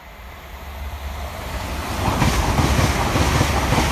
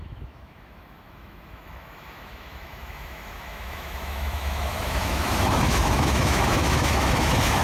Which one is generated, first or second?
second